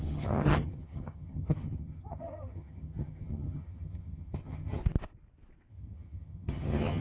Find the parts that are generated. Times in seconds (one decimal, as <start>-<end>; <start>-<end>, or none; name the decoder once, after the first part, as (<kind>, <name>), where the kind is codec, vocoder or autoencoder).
0.0-4.8 (vocoder, HiFi-GAN); 5.7-7.0